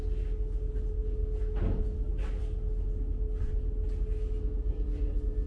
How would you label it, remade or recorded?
recorded